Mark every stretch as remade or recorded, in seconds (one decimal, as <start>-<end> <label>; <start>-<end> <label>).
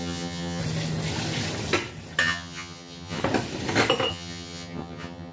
0.0-0.6 remade; 0.6-2.2 recorded; 2.2-3.2 remade; 3.2-4.1 recorded; 4.1-5.3 remade